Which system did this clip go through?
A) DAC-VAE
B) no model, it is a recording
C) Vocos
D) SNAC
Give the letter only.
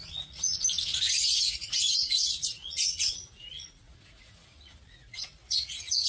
C